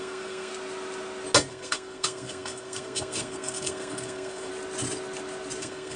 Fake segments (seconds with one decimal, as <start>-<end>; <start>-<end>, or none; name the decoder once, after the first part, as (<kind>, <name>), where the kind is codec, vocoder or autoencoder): 0.0-0.5 (codec, SNAC); 1.5-4.5; 5.6-6.0